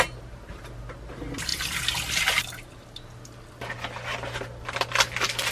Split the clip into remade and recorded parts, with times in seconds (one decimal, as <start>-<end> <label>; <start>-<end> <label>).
0.0-5.5 recorded